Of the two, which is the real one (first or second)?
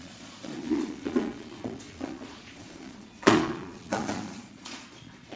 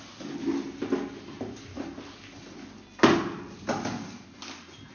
second